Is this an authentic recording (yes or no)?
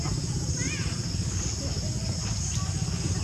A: yes